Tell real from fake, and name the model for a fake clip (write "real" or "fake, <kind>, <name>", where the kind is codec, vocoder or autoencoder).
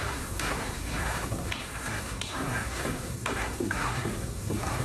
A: fake, codec, SNAC